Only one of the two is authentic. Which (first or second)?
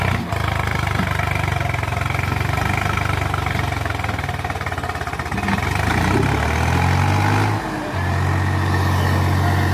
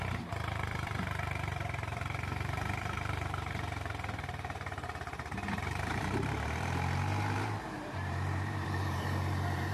first